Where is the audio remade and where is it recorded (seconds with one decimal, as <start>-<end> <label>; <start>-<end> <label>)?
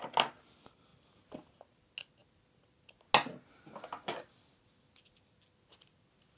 0.0-6.4 recorded